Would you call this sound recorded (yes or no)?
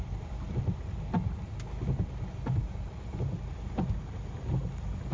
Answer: yes